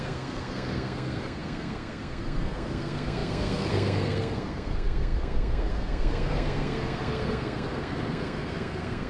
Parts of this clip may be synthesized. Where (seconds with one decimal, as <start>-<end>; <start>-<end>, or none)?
0.0-9.1